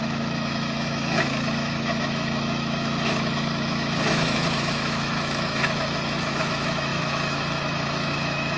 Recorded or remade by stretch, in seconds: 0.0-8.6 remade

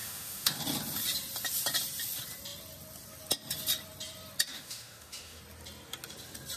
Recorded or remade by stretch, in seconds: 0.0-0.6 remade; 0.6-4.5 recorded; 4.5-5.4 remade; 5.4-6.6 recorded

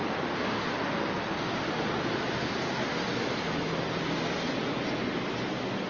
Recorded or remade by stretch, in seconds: 0.0-3.1 recorded; 3.1-3.8 remade; 3.8-5.9 recorded